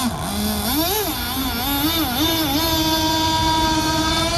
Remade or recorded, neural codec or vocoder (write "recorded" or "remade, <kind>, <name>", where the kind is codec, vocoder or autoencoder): recorded